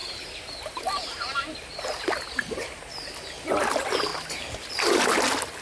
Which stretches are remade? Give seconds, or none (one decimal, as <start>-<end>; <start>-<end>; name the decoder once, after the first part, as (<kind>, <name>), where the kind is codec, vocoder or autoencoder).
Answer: none